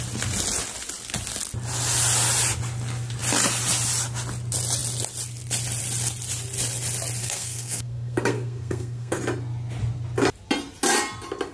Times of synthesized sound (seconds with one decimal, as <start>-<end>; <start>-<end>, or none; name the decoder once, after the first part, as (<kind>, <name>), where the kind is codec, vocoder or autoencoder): 7.2-9.2 (codec, SNAC)